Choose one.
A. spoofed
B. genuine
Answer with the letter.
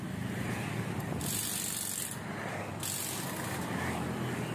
B